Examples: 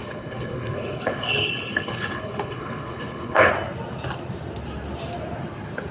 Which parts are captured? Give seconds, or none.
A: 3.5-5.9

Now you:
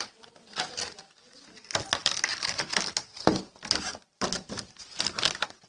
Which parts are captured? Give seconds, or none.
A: 0.0-5.7